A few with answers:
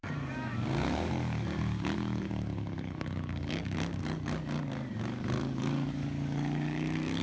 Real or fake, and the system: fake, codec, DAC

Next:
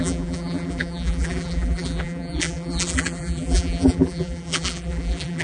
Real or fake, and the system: fake, vocoder, BigVGAN v2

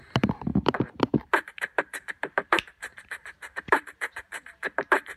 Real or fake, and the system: fake, vocoder, BigVGAN v2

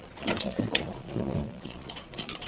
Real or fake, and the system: fake, vocoder, Vocos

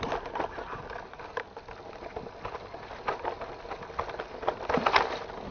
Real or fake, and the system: real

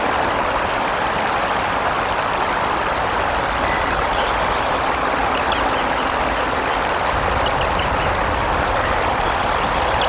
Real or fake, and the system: real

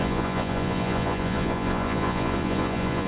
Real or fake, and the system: fake, vocoder, Vocos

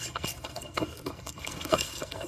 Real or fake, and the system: fake, codec, SNAC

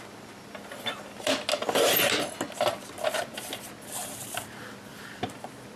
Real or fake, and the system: real